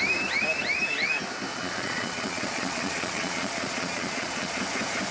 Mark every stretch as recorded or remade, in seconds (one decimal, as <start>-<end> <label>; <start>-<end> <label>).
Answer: 0.0-1.5 recorded; 1.5-4.6 remade; 4.6-5.1 recorded